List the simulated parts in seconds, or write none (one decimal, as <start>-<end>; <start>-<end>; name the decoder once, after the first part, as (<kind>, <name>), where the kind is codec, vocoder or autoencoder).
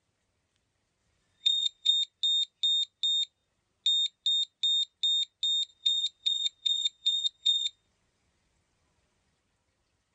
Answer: 1.0-1.9 (vocoder, Vocos); 5.7-9.4